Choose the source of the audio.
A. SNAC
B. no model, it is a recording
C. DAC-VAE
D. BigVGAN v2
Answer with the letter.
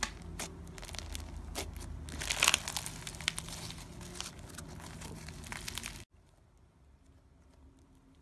B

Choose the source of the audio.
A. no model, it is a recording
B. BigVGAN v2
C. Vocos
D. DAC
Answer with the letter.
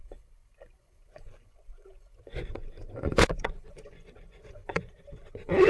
C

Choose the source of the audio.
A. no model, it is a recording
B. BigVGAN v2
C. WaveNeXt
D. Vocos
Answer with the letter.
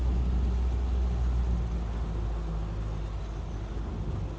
A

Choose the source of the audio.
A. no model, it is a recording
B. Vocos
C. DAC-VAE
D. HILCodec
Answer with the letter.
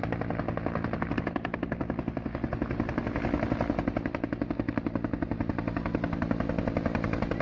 A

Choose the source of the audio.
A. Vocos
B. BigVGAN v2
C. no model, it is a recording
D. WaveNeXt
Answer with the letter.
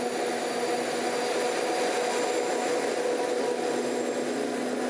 C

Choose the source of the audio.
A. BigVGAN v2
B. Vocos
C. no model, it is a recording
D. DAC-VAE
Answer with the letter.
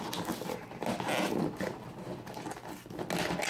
C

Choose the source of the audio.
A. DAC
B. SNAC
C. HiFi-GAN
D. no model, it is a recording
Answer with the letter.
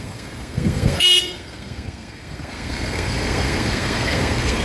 B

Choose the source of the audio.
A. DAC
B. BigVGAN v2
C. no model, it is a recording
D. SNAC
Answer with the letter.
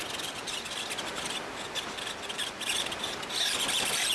C